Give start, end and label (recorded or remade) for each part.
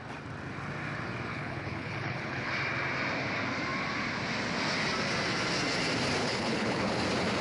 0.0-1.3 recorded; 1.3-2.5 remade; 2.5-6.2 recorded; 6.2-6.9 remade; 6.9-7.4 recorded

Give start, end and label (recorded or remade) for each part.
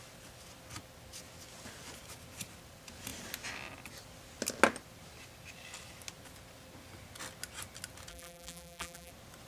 0.0-8.1 recorded; 8.1-9.1 remade; 9.1-9.5 recorded